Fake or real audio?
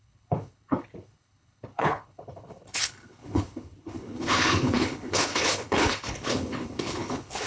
fake